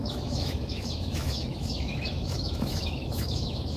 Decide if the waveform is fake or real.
fake